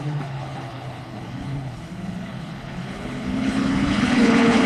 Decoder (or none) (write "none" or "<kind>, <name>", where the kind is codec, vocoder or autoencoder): codec, HILCodec